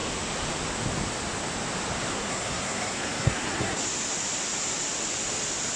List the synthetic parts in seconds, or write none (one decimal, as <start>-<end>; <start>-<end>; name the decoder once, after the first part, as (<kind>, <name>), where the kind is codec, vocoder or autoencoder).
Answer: 2.1-3.8 (codec, SNAC)